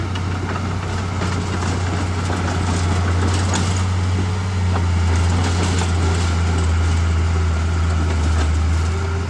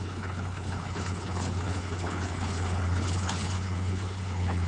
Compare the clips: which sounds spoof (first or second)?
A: second